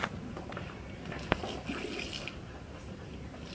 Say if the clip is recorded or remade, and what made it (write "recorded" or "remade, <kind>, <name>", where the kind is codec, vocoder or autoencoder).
recorded